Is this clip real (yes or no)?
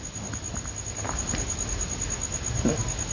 yes